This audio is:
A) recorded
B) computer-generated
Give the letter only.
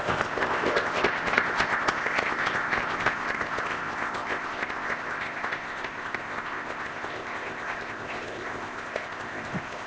B